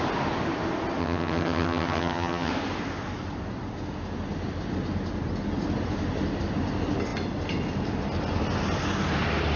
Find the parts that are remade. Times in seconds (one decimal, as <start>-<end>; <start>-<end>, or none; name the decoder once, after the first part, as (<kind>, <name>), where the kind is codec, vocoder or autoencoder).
1.0-2.5 (vocoder, HiFi-GAN)